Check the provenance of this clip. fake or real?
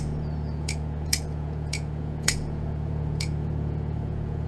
fake